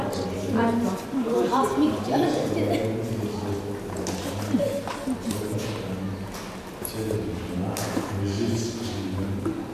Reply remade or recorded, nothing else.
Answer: recorded